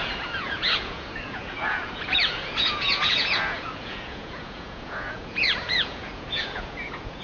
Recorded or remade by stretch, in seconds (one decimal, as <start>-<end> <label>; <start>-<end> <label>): 0.0-7.2 remade